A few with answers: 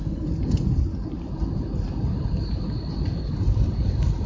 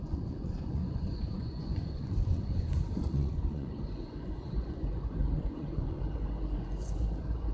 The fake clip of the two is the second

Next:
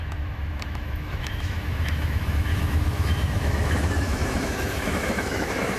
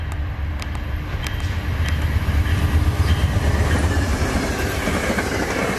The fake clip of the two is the first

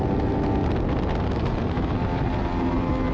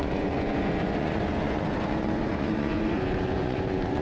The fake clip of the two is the second